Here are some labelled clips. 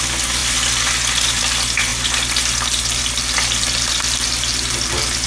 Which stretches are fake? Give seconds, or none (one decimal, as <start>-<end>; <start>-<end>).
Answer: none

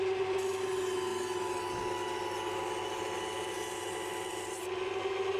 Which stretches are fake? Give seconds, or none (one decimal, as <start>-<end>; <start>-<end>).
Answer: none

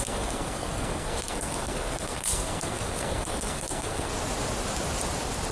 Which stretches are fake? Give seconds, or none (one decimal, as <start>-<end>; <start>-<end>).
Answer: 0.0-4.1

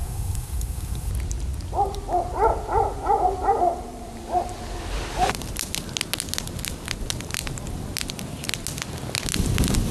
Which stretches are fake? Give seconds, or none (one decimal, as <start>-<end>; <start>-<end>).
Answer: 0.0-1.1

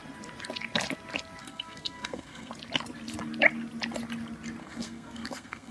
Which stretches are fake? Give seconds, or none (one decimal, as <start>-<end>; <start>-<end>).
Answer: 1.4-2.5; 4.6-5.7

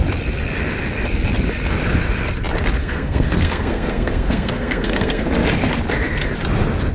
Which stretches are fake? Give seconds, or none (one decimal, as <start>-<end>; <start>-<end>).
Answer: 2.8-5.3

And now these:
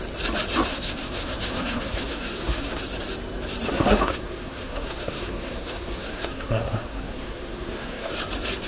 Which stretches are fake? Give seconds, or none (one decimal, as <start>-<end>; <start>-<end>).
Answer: 0.7-2.8; 3.7-8.1